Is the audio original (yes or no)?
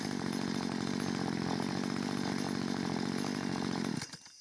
yes